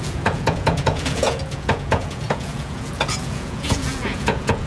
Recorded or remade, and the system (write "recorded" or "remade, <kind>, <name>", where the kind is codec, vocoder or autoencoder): remade, vocoder, Vocos